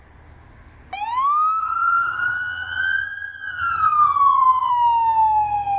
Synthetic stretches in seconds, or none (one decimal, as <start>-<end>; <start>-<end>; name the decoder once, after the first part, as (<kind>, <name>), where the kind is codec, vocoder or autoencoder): 1.6-4.7 (vocoder, HiFi-GAN)